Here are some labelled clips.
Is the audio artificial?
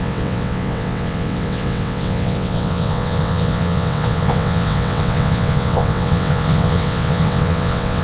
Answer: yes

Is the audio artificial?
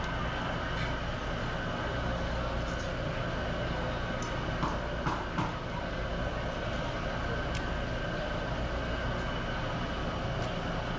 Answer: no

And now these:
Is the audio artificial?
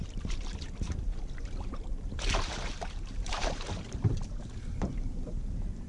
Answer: yes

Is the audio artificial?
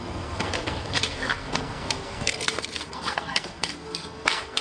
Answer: yes